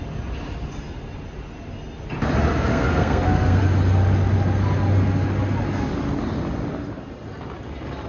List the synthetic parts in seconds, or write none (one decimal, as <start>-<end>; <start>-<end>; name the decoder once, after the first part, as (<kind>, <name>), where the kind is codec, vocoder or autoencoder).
2.7-3.6 (codec, SNAC)